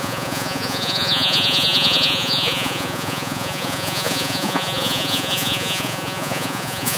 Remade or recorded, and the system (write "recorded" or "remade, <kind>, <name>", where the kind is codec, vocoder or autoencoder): remade, vocoder, Vocos